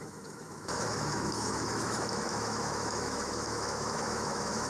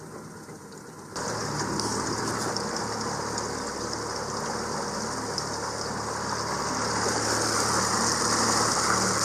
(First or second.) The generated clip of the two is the first